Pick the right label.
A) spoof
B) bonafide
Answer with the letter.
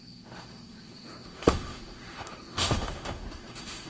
A